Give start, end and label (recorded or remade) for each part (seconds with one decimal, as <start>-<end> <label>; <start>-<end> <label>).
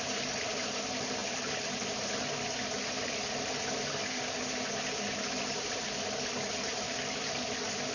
0.0-7.9 recorded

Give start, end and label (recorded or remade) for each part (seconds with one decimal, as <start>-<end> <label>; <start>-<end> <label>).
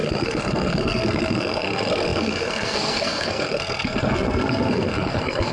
0.0-5.5 remade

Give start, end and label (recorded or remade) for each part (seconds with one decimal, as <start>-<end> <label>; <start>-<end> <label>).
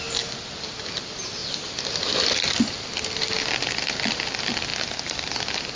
0.0-5.8 recorded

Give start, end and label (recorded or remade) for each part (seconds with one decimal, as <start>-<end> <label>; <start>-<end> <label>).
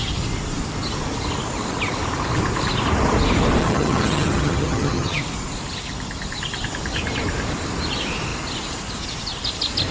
0.0-3.6 recorded; 3.6-5.2 remade; 5.2-9.9 recorded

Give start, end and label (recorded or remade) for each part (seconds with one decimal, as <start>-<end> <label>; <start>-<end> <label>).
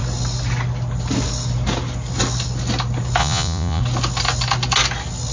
0.0-3.2 recorded; 3.2-3.8 remade; 3.8-5.3 recorded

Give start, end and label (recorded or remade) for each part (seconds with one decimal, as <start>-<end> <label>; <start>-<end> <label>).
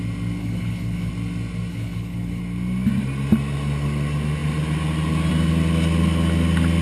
0.0-0.4 recorded; 0.4-1.1 remade; 1.1-1.7 recorded; 1.7-2.4 remade; 2.4-6.8 recorded